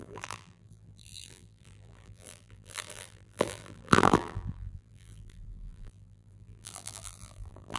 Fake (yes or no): yes